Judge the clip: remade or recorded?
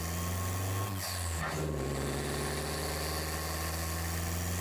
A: recorded